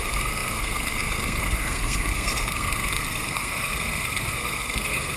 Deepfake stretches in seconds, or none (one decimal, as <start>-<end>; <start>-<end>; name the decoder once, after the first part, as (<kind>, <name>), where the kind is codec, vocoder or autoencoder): 0.0-5.2 (codec, SNAC)